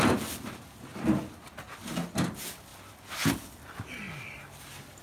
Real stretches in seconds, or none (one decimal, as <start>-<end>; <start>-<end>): 0.0-5.0